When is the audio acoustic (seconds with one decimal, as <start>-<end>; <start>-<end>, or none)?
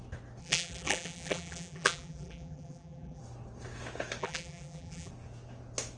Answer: 0.0-0.4; 3.2-4.2; 5.1-6.0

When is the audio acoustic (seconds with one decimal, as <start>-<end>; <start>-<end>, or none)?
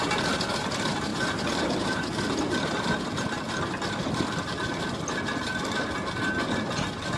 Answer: 0.0-1.1; 4.8-7.2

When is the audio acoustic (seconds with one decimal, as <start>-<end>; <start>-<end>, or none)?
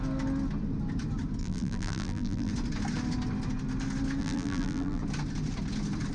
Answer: 0.0-1.4; 2.5-4.2; 5.0-6.1